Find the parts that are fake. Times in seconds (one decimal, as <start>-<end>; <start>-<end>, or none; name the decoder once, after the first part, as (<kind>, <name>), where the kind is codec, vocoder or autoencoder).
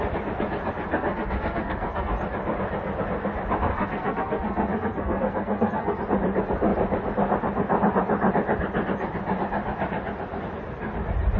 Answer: 0.9-2.1 (codec, SNAC); 3.7-6.0